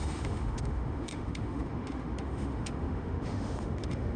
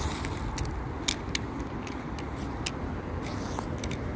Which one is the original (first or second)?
second